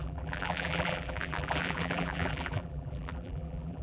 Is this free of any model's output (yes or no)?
no